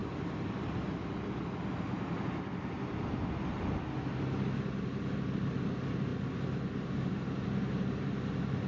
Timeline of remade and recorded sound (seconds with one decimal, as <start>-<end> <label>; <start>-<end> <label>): 0.0-8.7 recorded